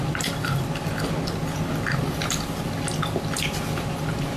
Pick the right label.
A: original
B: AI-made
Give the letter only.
A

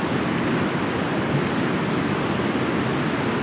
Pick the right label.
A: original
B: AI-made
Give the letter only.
A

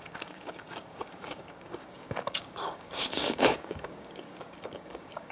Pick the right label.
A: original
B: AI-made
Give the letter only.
B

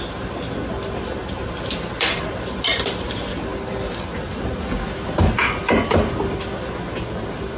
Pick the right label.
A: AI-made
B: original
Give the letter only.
B